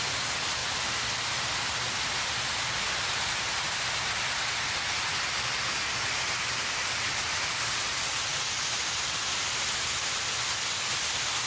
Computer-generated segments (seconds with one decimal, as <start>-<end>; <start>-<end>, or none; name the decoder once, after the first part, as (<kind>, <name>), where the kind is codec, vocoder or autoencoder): 0.6-2.7 (vocoder, BigVGAN v2); 8.3-10.7